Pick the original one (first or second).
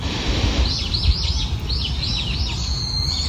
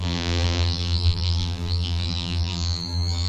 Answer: first